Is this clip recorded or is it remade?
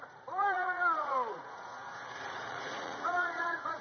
remade